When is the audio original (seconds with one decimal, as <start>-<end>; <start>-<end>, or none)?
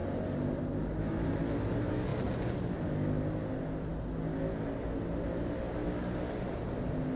0.0-7.2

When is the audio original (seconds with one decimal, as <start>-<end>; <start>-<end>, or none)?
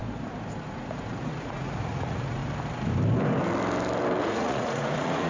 0.0-0.7; 2.4-4.2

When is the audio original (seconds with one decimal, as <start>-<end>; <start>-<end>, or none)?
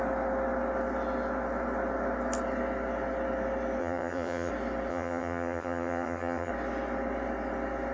0.0-3.8; 4.5-4.9; 6.5-7.9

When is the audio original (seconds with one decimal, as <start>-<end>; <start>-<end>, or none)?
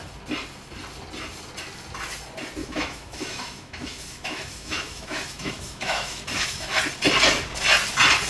0.0-2.6; 6.8-8.3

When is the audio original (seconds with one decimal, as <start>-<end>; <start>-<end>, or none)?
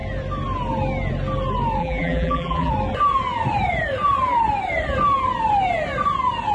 0.0-1.8; 2.7-6.5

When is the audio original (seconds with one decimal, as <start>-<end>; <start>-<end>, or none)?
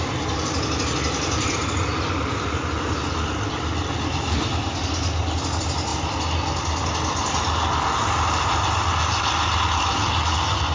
0.0-10.7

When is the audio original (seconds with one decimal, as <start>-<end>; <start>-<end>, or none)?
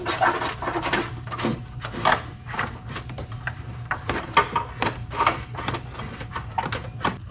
0.0-1.5; 4.5-7.3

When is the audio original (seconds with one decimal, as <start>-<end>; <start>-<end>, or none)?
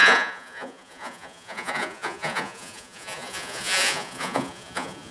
none